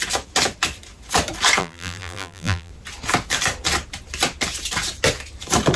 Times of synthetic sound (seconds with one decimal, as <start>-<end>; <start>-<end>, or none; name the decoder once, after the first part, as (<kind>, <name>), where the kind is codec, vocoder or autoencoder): 1.6-2.7 (vocoder, BigVGAN v2)